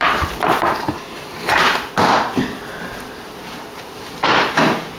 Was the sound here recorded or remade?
remade